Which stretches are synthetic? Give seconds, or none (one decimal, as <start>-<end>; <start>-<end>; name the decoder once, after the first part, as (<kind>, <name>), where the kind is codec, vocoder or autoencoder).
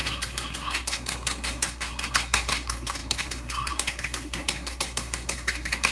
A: 0.0-5.9 (codec, SNAC)